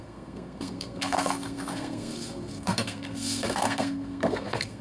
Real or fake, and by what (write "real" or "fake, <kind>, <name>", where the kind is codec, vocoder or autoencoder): fake, codec, SNAC